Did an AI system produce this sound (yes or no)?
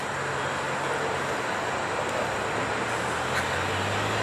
no